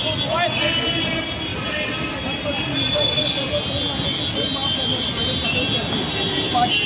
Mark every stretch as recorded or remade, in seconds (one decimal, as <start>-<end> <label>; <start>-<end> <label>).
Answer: 0.0-6.9 recorded